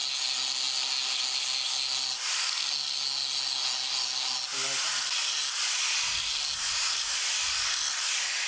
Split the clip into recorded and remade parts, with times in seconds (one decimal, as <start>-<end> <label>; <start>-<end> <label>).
0.0-8.5 recorded